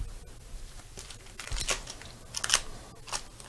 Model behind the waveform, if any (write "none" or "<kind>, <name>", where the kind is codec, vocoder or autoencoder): none